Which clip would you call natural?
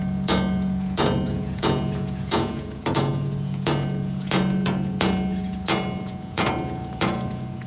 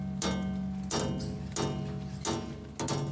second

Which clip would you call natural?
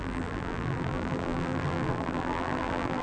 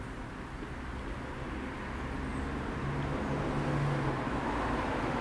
second